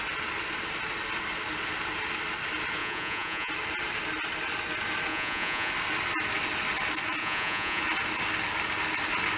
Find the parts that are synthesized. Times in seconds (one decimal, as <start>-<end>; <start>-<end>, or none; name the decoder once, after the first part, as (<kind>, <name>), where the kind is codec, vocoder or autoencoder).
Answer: 2.8-3.5 (vocoder, Vocos); 5.1-5.7; 7.2-7.8